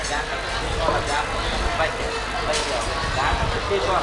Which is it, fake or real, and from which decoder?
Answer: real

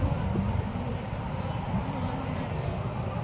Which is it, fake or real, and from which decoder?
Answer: fake, vocoder, BigVGAN v2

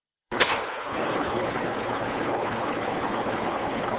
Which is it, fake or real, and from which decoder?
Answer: fake, codec, HILCodec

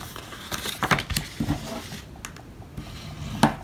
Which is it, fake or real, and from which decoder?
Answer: real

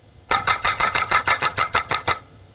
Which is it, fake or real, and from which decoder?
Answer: fake, vocoder, HiFi-GAN